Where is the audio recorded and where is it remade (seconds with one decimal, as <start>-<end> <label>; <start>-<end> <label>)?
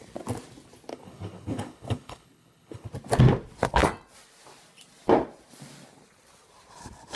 0.0-0.9 recorded; 0.9-2.9 remade; 2.9-7.2 recorded